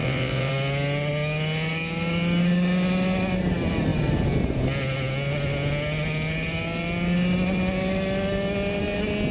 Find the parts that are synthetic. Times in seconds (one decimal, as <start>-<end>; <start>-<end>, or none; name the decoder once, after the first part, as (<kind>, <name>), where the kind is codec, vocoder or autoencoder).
0.0-0.5 (vocoder, WaveNeXt)